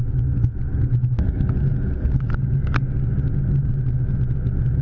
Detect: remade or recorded recorded